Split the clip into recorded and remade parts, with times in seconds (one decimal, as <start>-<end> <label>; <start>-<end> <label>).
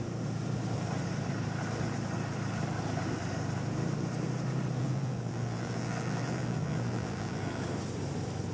0.0-4.8 recorded; 4.8-7.6 remade; 7.6-8.5 recorded